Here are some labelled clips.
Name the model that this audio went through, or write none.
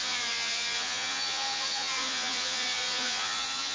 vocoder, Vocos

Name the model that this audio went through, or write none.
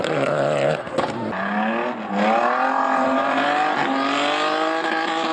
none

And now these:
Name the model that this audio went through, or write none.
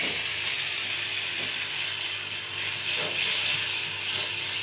none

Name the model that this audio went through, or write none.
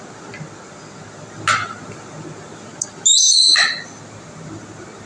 none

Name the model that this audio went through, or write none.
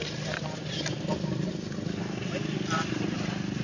none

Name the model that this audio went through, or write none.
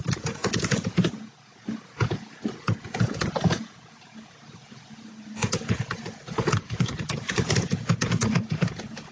vocoder, Vocos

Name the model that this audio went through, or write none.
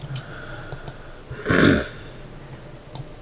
none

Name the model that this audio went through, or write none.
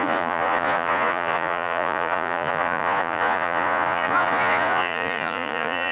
vocoder, Vocos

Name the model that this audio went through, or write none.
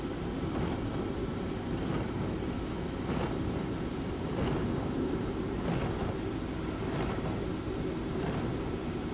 none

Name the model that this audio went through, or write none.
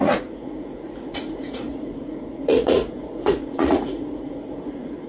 vocoder, Vocos